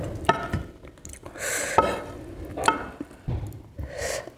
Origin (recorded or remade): recorded